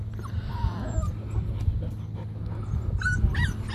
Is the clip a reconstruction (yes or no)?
no